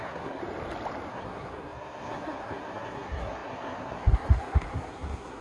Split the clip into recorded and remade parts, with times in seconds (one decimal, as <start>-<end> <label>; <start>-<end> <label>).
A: 0.0-0.4 remade; 0.4-1.1 recorded; 1.1-5.4 remade